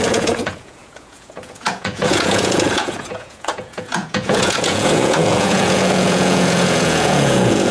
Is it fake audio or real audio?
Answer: fake